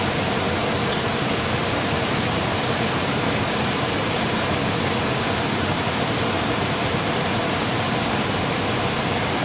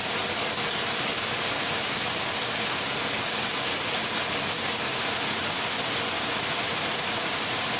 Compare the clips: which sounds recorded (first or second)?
second